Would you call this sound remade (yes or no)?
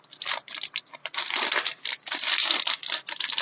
no